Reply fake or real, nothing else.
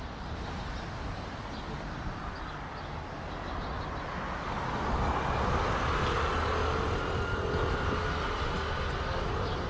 real